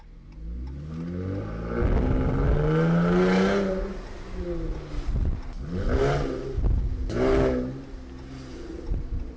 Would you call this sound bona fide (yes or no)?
yes